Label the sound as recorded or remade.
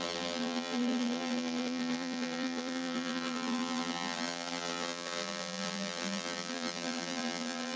remade